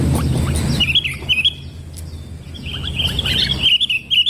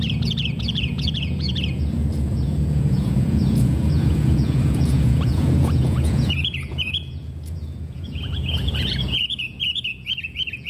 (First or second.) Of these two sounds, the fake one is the second